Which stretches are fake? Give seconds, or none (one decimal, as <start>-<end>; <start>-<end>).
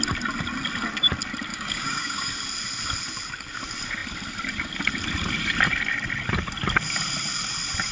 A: 1.5-2.3